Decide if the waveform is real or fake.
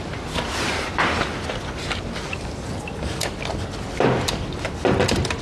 real